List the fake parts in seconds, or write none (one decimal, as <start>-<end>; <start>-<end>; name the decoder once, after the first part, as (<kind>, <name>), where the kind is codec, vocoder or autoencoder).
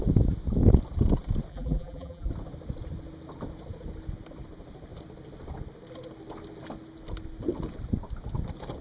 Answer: 1.5-2.3 (vocoder, BigVGAN v2)